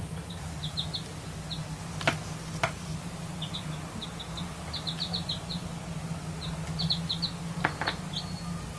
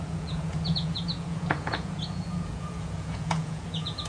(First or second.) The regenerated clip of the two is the second